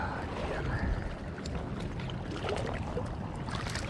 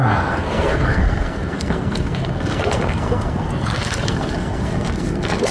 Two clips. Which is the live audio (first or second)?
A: first